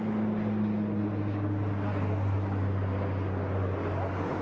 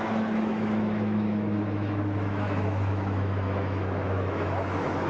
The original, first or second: first